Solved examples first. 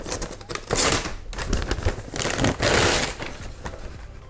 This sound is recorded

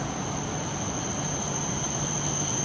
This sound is recorded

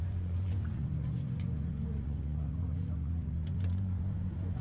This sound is remade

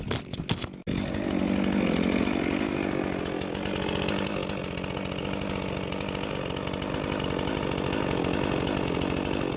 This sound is recorded